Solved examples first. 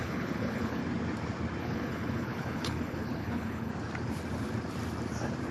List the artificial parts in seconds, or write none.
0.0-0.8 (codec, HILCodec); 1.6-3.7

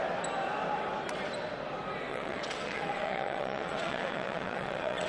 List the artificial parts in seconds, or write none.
2.1-5.1 (vocoder, WaveNeXt)

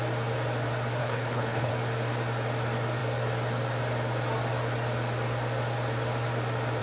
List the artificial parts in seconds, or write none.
1.0-1.7 (codec, HILCodec)